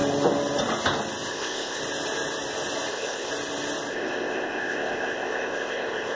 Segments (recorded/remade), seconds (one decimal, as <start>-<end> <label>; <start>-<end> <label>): 0.0-1.3 recorded; 1.3-1.8 remade; 1.8-2.9 recorded; 2.9-3.3 remade; 3.3-3.9 recorded; 3.9-6.2 remade